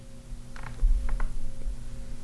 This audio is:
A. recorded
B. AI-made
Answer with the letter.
A